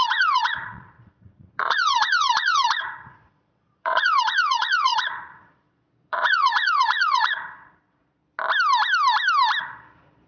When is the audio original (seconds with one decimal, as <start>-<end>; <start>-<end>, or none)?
8.2-9.6